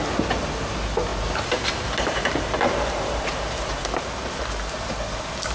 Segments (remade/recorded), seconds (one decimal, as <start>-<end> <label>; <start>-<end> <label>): 0.0-1.1 recorded; 1.1-4.4 remade; 4.4-5.5 recorded